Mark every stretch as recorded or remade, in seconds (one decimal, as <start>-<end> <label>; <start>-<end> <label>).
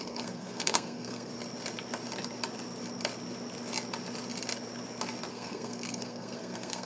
0.0-1.3 remade; 1.3-5.3 recorded; 5.3-6.9 remade